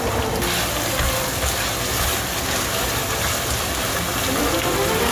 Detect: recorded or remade recorded